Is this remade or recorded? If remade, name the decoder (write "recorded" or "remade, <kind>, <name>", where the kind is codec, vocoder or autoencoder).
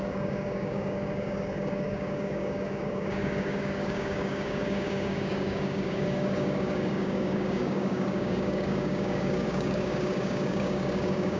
remade, codec, DAC